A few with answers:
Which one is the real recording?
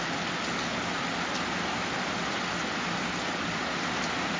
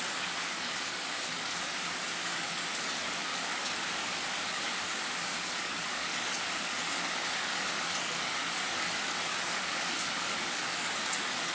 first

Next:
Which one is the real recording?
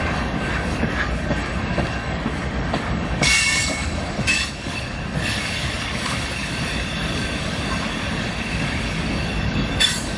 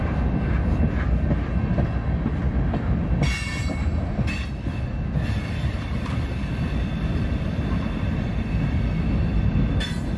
second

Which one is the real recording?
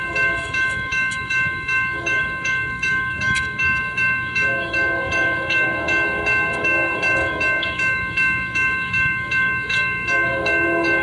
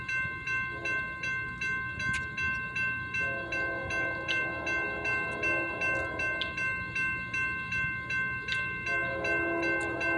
second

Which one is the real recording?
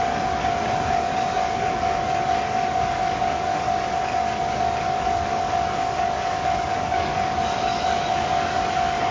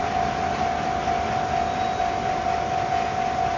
second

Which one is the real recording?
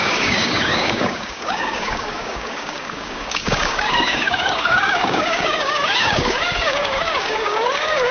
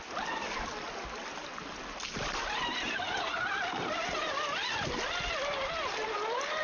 second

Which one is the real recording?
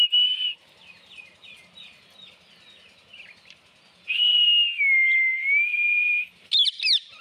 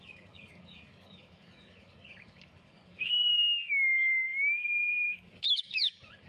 first